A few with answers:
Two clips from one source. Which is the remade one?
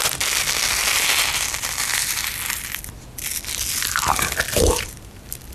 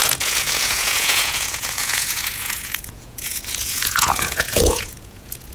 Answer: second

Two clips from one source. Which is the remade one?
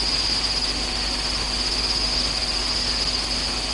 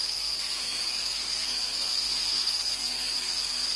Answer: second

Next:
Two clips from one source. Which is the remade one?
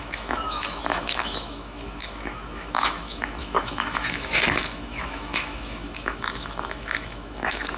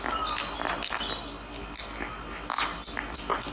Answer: first